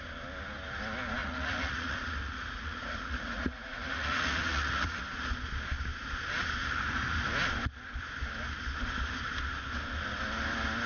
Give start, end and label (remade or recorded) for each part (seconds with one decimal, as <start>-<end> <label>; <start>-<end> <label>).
0.0-1.2 recorded; 1.2-5.0 remade; 5.0-10.9 recorded